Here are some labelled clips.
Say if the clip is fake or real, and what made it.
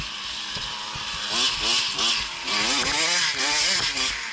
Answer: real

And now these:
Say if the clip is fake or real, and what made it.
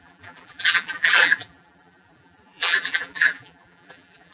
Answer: fake, vocoder, BigVGAN v2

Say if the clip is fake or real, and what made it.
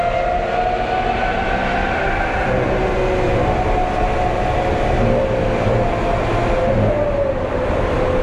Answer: real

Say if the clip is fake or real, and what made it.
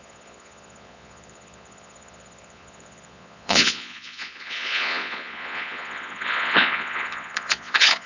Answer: fake, vocoder, Vocos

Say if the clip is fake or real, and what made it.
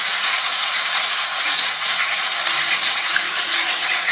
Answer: fake, vocoder, Vocos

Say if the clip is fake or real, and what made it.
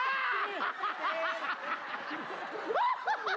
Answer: fake, vocoder, BigVGAN v2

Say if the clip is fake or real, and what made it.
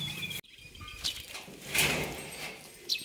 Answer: real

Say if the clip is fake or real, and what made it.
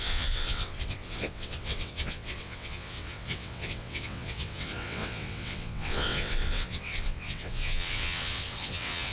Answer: fake, vocoder, WaveNeXt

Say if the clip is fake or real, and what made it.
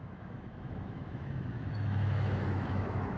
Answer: fake, autoencoder, DAC-VAE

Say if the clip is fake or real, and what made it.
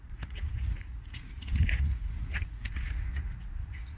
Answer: fake, vocoder, Vocos